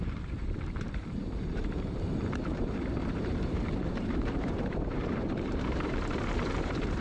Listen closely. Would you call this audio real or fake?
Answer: fake